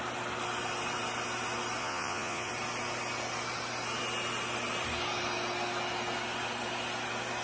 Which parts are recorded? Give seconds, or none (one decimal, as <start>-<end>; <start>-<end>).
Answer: 0.0-1.8; 2.5-7.4